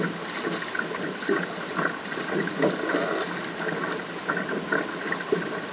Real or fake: real